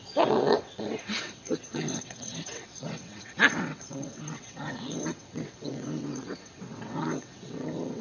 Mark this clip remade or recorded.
remade